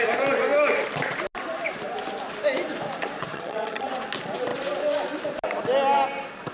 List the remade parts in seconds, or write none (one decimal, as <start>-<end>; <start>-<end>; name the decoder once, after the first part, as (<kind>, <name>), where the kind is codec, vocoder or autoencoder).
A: 3.3-3.9 (vocoder, HiFi-GAN)